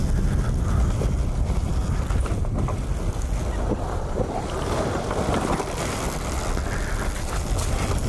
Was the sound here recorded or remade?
recorded